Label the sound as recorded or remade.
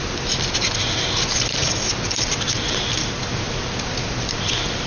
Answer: remade